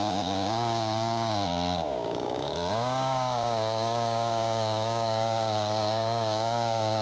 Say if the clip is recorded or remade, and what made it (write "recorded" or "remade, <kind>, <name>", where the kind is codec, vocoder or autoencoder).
remade, codec, DAC